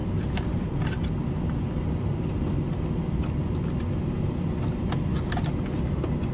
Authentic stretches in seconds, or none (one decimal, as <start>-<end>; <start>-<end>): 0.0-6.3